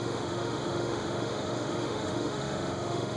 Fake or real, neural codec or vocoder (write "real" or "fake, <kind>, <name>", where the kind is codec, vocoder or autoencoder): fake, autoencoder, DAC-VAE